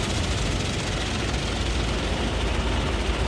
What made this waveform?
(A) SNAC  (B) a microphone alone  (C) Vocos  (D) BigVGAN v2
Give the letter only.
B